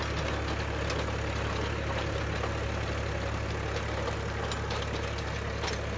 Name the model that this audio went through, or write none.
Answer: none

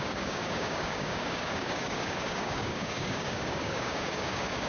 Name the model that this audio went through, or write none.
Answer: codec, DAC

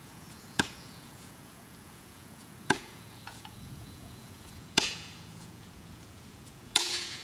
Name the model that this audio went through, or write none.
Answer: vocoder, Vocos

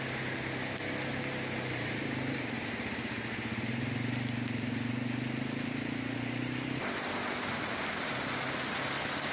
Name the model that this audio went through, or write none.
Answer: none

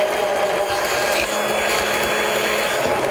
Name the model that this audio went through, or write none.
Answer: none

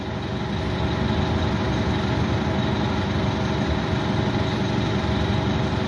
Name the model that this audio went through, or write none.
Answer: none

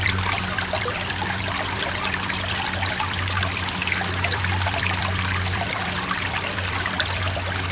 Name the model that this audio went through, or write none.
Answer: vocoder, BigVGAN v2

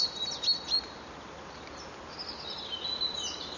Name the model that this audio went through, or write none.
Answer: none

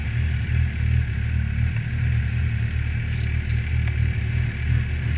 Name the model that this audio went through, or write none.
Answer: none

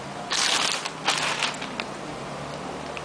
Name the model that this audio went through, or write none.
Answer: none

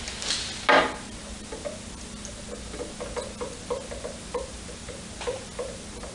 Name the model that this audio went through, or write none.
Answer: none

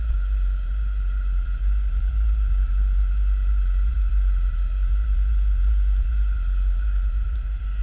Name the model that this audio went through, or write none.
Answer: vocoder, BigVGAN v2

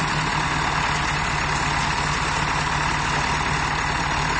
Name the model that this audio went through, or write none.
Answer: none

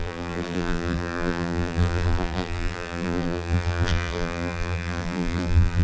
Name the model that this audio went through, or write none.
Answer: vocoder, BigVGAN v2